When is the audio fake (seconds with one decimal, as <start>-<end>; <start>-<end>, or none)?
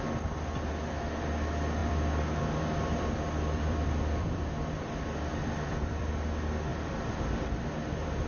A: 1.8-4.4; 5.3-6.1; 6.7-7.6